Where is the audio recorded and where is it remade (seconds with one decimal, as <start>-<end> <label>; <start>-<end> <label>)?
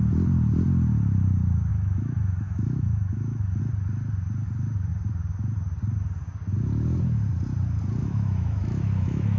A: 0.0-1.7 recorded; 1.7-3.6 remade; 3.6-8.0 recorded; 8.0-9.4 remade